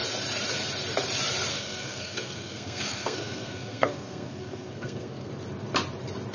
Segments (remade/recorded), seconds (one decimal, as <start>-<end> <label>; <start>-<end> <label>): 0.0-1.5 recorded; 1.5-5.3 remade; 5.3-6.3 recorded